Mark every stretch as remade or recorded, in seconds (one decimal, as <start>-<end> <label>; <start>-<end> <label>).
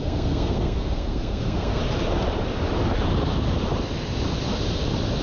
0.0-1.8 remade; 1.8-5.2 recorded